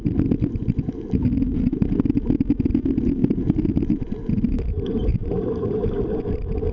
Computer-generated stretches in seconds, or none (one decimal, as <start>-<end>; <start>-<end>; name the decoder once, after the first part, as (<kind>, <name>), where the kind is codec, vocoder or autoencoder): 3.2-4.1 (vocoder, BigVGAN v2); 5.1-6.1